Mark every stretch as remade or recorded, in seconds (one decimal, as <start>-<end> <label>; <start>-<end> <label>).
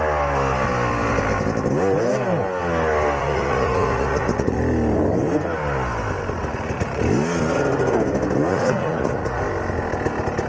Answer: 0.0-3.2 recorded; 3.2-4.6 remade; 4.6-6.4 recorded; 6.4-7.0 remade; 7.0-8.5 recorded; 8.5-9.4 remade; 9.4-10.5 recorded